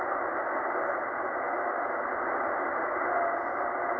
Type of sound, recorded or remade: recorded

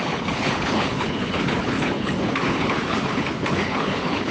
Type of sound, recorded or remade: remade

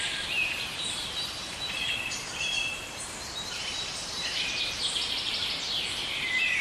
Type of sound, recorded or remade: remade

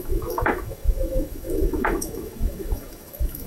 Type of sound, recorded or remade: remade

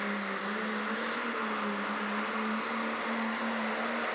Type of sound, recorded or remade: recorded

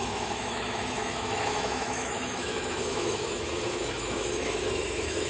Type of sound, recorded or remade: remade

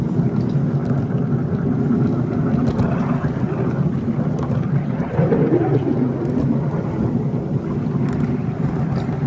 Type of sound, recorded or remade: recorded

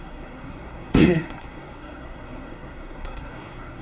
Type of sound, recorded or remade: remade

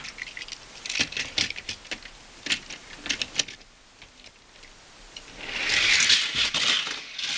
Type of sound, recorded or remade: recorded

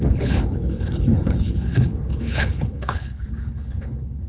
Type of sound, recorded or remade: remade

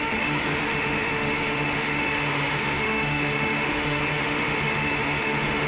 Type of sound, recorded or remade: remade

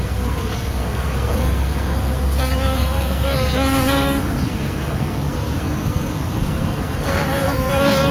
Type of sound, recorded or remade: remade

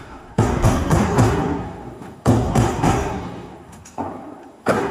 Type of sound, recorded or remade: remade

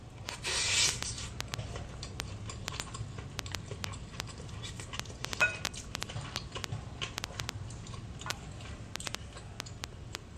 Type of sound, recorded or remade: recorded